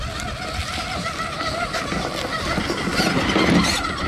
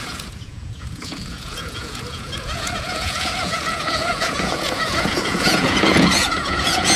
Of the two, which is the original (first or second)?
first